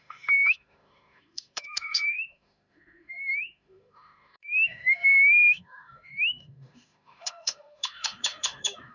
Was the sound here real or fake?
fake